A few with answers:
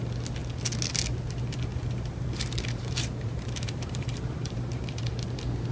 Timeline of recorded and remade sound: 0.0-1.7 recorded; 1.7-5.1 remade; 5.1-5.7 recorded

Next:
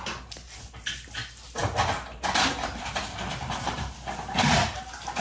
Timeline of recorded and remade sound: 0.0-5.2 recorded

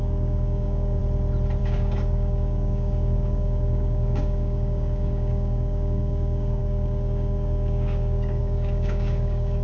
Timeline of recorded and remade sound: 0.0-1.0 remade; 1.0-1.6 recorded; 1.6-9.6 remade

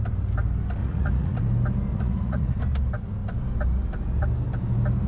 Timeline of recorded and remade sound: 0.0-0.8 recorded; 0.8-1.4 remade; 1.4-1.9 recorded; 1.9-2.6 remade; 2.6-5.1 recorded

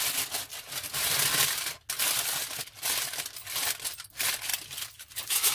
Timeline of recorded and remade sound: 0.0-5.5 recorded